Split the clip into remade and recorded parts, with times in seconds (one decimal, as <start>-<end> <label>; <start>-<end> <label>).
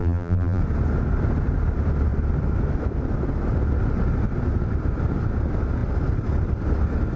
0.0-0.6 remade; 0.6-7.2 recorded